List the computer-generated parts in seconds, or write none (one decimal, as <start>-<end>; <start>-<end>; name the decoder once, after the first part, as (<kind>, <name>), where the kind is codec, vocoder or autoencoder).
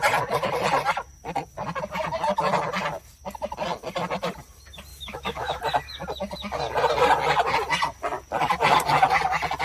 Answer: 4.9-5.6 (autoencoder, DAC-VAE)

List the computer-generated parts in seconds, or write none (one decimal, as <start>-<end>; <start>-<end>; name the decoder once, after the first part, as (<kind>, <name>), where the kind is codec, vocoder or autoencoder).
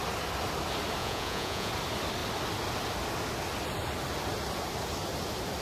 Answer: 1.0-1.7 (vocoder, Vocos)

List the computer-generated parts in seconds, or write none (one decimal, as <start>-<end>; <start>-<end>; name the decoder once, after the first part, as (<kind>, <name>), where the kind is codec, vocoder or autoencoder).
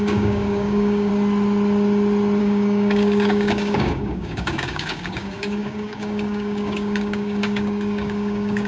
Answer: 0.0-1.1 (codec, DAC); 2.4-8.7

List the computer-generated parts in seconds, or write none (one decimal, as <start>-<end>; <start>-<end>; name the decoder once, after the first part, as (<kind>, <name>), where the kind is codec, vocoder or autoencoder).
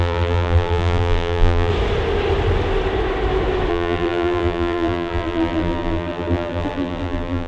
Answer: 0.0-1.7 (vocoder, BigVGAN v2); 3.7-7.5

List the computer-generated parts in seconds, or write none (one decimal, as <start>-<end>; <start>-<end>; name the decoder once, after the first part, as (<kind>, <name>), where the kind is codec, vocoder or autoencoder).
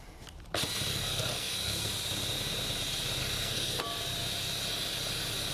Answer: 0.9-1.9 (codec, SNAC); 3.2-3.8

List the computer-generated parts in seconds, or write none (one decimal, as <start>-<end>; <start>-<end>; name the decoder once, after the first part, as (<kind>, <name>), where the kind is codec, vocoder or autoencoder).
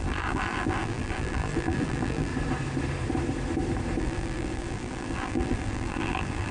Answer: 0.0-2.3 (vocoder, BigVGAN v2); 4.0-6.5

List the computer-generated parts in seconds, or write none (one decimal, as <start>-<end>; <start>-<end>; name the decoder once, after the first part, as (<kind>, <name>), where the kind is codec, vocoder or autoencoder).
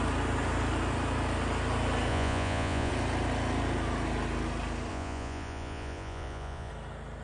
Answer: 2.1-2.9 (vocoder, Vocos); 4.9-6.7